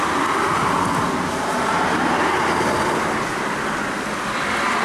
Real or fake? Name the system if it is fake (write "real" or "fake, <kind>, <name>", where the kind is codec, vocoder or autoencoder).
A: real